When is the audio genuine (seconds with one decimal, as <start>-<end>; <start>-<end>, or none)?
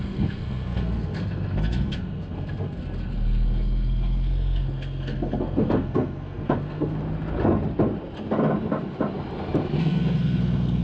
7.0-9.8